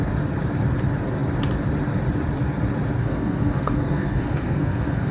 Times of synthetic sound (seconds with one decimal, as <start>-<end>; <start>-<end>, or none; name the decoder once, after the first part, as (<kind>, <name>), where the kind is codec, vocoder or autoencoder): 3.0-5.1 (codec, SNAC)